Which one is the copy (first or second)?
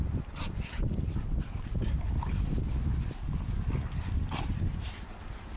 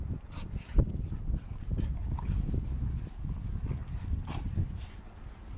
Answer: first